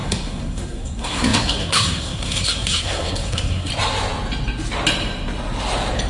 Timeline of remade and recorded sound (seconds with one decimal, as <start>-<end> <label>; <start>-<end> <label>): 0.0-3.7 remade; 3.7-6.1 recorded